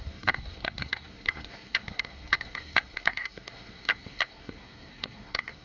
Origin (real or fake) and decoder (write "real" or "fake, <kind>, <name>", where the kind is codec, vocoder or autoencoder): fake, codec, SNAC